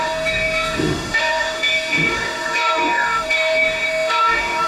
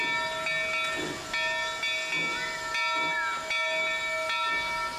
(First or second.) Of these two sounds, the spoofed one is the first